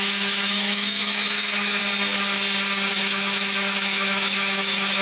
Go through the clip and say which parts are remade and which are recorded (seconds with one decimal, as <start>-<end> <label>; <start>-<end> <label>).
0.0-1.8 remade; 1.8-2.9 recorded; 2.9-5.0 remade